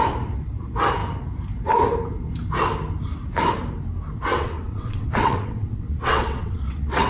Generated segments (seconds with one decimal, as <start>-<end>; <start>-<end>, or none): 4.3-7.1